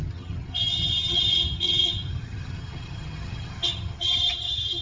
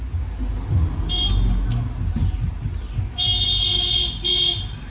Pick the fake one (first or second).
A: first